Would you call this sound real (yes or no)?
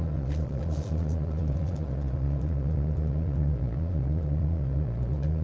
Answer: no